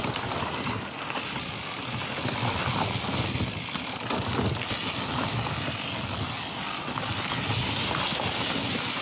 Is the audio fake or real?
real